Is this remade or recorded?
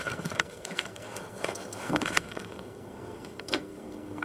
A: remade